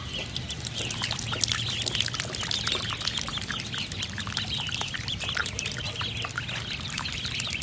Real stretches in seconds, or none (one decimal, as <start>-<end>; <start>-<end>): 0.0-5.4; 5.9-7.6